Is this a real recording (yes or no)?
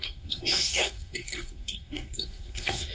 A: no